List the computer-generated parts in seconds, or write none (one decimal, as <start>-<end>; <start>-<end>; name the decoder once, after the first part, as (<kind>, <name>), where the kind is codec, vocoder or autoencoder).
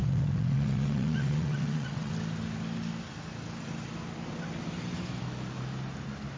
0.0-2.1 (vocoder, WaveNeXt)